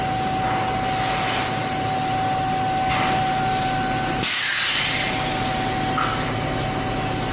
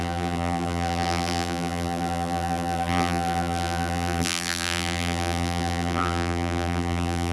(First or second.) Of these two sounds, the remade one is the second